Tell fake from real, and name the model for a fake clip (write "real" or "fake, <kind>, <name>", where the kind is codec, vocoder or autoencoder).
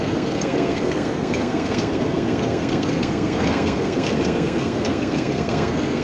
fake, codec, SNAC